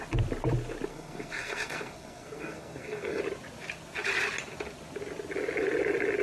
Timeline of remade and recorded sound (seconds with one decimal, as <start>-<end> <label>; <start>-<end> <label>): 0.0-0.9 recorded; 0.9-3.2 remade; 3.2-6.2 recorded